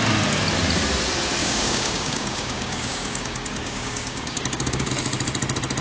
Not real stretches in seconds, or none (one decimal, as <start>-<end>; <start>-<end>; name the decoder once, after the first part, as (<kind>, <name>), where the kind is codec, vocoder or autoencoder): 1.4-4.9 (codec, DAC)